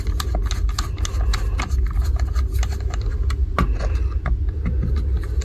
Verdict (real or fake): real